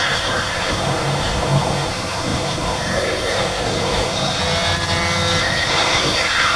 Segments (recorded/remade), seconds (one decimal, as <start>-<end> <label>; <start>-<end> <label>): 0.0-4.4 remade; 4.4-5.4 recorded; 5.4-6.6 remade